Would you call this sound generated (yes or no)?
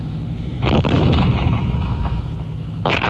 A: yes